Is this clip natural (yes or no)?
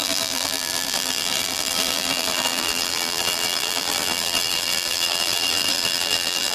no